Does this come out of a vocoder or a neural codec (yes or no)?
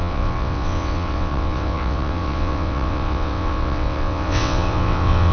yes